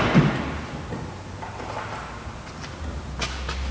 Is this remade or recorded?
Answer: recorded